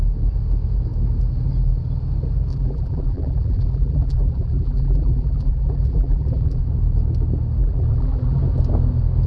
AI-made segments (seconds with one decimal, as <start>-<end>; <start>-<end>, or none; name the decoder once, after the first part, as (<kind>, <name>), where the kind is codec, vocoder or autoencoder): 2.5-6.6 (vocoder, BigVGAN v2); 7.6-8.4